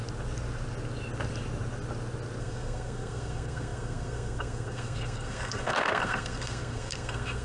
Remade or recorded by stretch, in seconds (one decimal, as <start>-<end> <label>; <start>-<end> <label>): 0.0-2.4 recorded; 2.4-7.4 remade

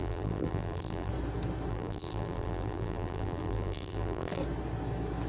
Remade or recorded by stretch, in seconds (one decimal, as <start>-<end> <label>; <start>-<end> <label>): 0.0-1.1 remade; 1.1-1.7 recorded; 1.7-4.4 remade; 4.4-5.3 recorded

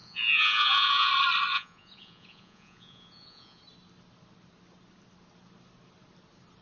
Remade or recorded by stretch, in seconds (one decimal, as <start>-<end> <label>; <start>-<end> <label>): 0.0-1.1 remade; 1.1-1.5 recorded; 1.5-3.6 remade; 3.6-6.6 recorded

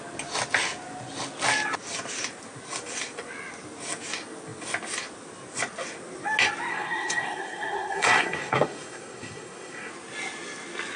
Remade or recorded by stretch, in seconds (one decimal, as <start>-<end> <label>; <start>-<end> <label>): 0.0-6.7 recorded; 6.7-9.9 remade; 9.9-11.0 recorded

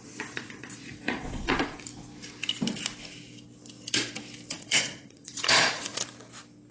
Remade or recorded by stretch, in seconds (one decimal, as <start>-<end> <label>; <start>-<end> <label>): 0.0-1.9 remade; 1.9-4.5 recorded; 4.5-5.9 remade; 5.9-6.7 recorded

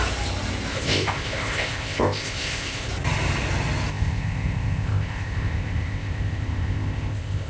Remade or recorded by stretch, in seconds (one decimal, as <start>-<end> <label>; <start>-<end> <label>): 0.0-0.7 recorded; 0.7-2.9 remade; 2.9-3.9 recorded; 3.9-7.5 remade